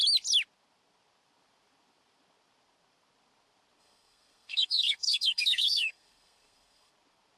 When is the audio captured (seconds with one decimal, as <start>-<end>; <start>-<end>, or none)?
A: 0.0-3.8; 6.9-7.4